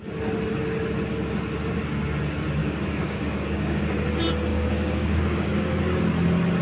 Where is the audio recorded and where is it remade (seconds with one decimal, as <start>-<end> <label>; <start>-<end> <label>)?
0.0-2.6 recorded; 2.6-3.8 remade; 3.8-4.5 recorded; 4.5-5.8 remade; 5.8-6.6 recorded